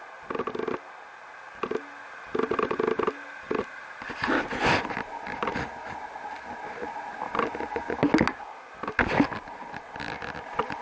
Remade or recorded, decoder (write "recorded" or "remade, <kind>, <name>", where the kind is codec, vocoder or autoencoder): recorded